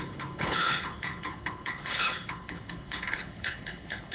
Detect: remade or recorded remade